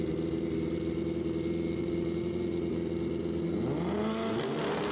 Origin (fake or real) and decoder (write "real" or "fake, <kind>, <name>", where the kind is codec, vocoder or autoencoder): real